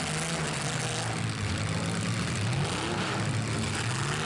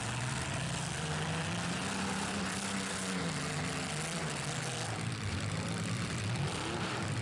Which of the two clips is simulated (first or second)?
second